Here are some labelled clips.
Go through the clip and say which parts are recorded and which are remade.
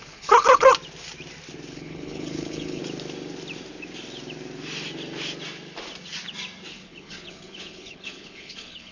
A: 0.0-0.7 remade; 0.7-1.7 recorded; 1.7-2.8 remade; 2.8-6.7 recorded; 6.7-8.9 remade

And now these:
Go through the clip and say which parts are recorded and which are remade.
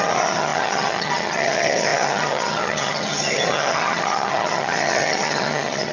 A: 0.0-5.9 remade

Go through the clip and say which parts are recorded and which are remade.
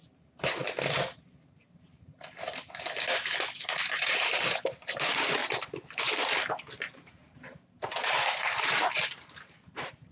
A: 0.0-0.6 remade; 0.6-1.5 recorded; 1.5-5.4 remade; 5.4-6.9 recorded; 6.9-10.1 remade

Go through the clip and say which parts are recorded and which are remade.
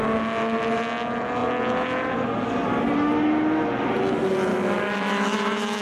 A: 0.0-4.5 recorded; 4.5-5.8 remade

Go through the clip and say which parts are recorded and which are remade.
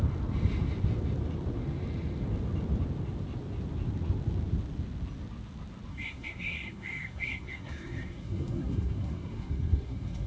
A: 0.0-5.9 recorded; 5.9-10.3 remade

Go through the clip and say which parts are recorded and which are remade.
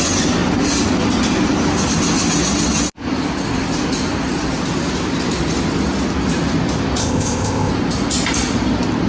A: 0.0-7.0 recorded; 7.0-7.7 remade; 7.7-9.1 recorded